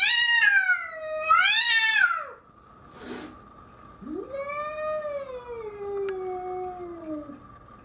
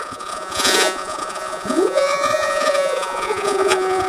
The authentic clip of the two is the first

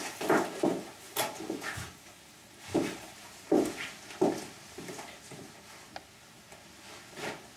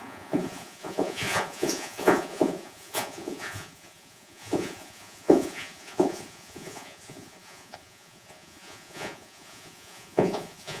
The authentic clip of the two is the first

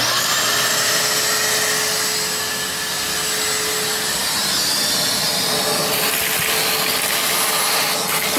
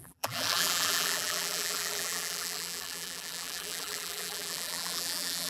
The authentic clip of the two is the first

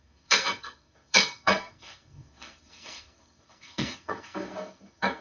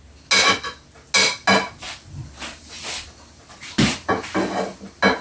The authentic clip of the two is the second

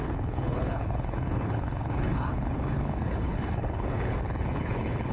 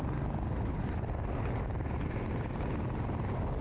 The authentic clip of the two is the second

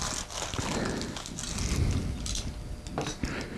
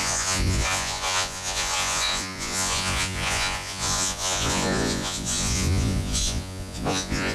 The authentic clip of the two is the first